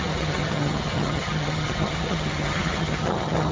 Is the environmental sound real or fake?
fake